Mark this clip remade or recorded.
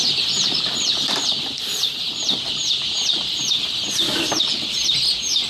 remade